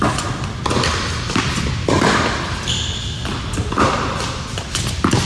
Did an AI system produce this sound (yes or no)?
no